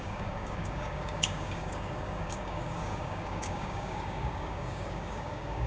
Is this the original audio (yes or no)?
no